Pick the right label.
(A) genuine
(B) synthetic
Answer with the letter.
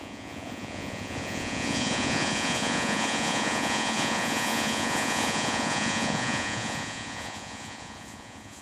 B